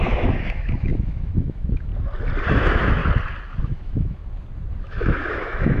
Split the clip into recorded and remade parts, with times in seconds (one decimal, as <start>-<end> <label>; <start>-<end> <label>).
0.0-1.9 remade; 1.9-2.5 recorded; 2.5-3.0 remade; 3.0-3.6 recorded; 3.6-4.2 remade; 4.2-4.8 recorded; 4.8-5.8 remade